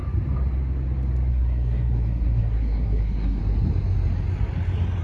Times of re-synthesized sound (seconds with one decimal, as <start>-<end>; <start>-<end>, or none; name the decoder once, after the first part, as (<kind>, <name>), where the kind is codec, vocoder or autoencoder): 1.3-3.4 (codec, SNAC)